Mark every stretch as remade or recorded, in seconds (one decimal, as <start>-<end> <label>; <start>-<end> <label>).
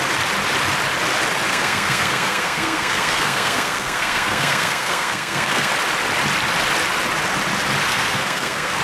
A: 0.0-1.5 recorded; 1.5-5.7 remade; 5.7-7.9 recorded; 7.9-8.8 remade